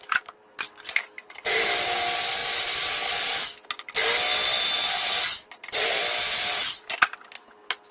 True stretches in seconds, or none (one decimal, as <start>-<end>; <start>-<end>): 0.0-7.9